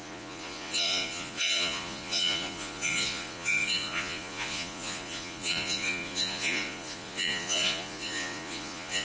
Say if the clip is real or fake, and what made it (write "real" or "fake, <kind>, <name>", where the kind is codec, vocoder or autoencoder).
fake, vocoder, Vocos